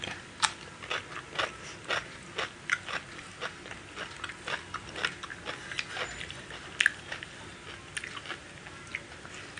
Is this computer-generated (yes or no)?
no